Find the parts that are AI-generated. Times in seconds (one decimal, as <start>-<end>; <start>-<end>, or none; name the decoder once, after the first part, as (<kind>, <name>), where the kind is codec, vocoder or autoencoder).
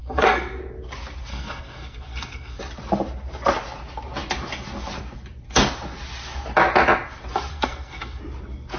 0.0-0.6 (codec, SNAC); 1.3-2.6; 7.5-8.2